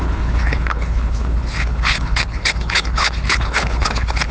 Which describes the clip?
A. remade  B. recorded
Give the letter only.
A